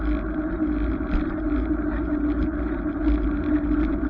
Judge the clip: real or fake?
real